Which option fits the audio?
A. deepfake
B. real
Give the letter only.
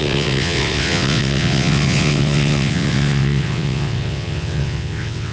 A